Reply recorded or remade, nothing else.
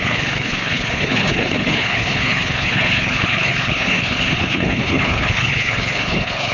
remade